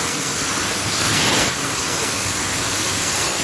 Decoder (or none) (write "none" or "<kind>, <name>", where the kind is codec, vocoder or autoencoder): codec, SNAC